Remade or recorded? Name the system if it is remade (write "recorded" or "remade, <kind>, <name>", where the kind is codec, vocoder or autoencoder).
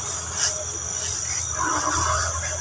recorded